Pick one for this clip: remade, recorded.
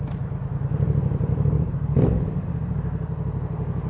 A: recorded